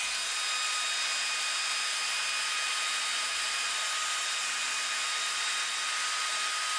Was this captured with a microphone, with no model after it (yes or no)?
yes